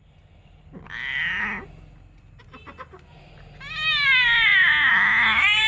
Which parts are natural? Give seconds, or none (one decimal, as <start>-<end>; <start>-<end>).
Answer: 0.0-5.7